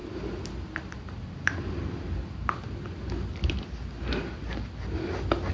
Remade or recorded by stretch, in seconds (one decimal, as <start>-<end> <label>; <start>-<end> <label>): 0.0-5.5 recorded